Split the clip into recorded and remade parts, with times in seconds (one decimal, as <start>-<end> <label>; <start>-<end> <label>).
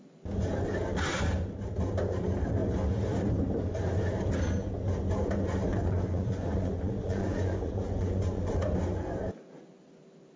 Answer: 0.0-5.7 recorded; 5.7-8.5 remade; 8.5-10.4 recorded